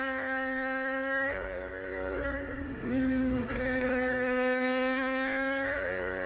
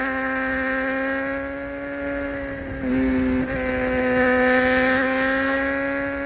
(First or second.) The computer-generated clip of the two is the first